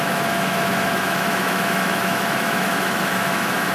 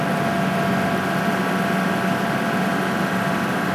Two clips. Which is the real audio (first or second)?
second